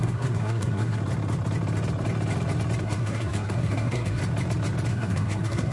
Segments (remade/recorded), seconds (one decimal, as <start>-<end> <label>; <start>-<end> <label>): 0.0-1.0 remade; 1.0-2.8 recorded; 2.8-4.2 remade; 4.2-4.9 recorded; 4.9-5.7 remade

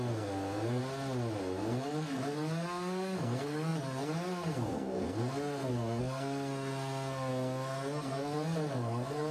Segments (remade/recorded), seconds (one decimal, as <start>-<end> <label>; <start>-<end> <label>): 0.0-0.8 remade; 0.8-1.4 recorded; 1.4-9.3 remade

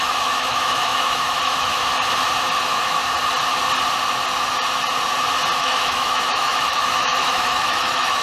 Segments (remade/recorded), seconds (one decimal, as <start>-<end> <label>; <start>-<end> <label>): 0.0-1.8 remade; 1.8-2.6 recorded; 2.6-3.0 remade; 3.0-5.6 recorded; 5.6-8.2 remade

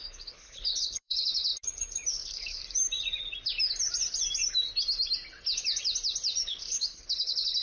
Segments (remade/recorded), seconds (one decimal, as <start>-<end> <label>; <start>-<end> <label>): 0.0-1.5 remade; 1.5-2.1 recorded; 2.1-2.6 remade; 2.6-6.4 recorded; 6.4-7.6 remade

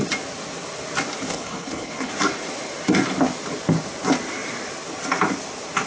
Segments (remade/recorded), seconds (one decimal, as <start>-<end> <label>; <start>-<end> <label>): 0.0-1.3 recorded; 1.3-2.1 remade; 2.1-5.9 recorded

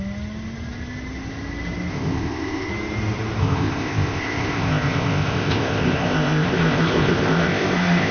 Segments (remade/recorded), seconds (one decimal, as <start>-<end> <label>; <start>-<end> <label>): 0.0-1.9 recorded; 1.9-2.7 remade; 2.7-3.4 recorded; 3.4-8.1 remade

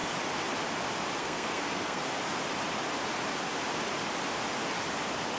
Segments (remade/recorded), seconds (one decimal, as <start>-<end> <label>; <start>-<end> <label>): 0.0-1.2 recorded; 1.2-2.0 remade; 2.0-5.4 recorded